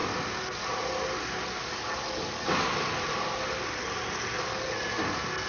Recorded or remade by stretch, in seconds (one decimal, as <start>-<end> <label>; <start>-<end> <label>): 0.0-5.5 recorded